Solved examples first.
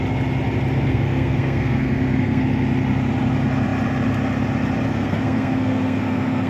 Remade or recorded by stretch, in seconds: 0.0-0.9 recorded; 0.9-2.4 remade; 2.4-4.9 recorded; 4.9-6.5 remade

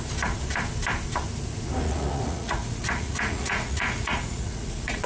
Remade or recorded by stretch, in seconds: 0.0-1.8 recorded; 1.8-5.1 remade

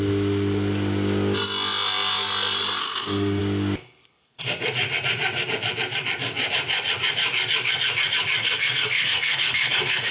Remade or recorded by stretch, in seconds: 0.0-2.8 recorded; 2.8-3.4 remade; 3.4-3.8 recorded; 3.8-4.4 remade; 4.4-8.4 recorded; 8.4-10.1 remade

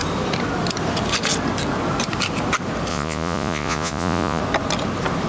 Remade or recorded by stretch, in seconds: 0.0-2.9 recorded; 2.9-4.4 remade; 4.4-5.3 recorded

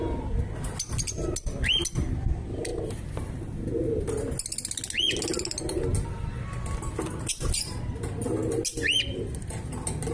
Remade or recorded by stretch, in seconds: 0.0-10.1 recorded

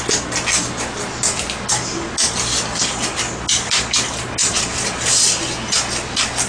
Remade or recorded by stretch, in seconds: 0.0-4.4 recorded; 4.4-5.4 remade; 5.4-6.5 recorded

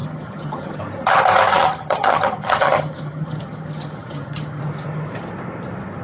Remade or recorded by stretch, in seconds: 0.0-0.8 remade; 0.8-1.5 recorded; 1.5-4.6 remade; 4.6-6.0 recorded

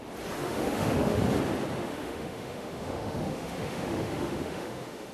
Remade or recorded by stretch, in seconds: 0.0-0.4 recorded; 0.4-1.2 remade; 1.2-1.8 recorded; 1.8-5.1 remade